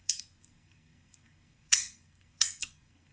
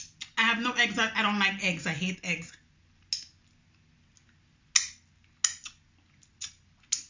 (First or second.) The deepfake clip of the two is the first